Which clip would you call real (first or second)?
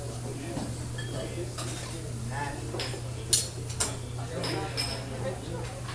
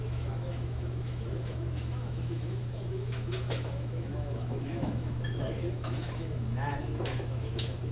first